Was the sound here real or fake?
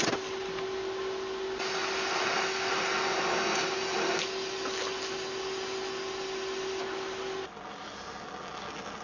real